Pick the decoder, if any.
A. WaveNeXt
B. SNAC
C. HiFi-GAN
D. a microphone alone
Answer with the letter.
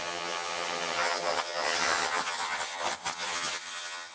C